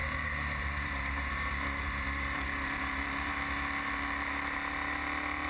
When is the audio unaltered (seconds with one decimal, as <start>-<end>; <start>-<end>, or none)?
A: 3.3-5.5